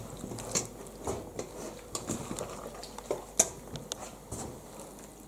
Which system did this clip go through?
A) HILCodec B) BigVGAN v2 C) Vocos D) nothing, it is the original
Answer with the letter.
D